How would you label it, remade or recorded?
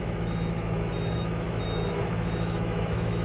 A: remade